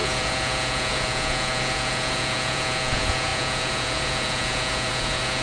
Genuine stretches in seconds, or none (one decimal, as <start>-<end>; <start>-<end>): none